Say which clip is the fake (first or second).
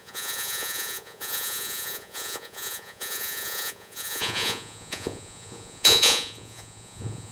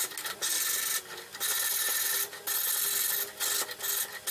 first